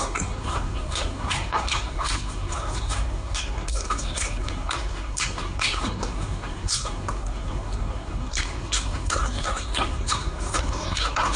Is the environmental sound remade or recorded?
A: remade